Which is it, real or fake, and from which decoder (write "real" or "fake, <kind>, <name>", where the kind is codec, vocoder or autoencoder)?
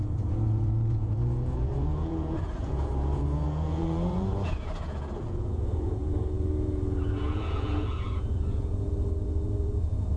fake, vocoder, Vocos